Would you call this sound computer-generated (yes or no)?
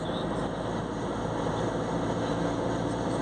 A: no